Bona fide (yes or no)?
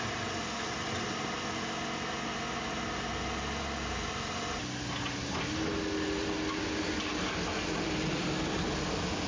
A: yes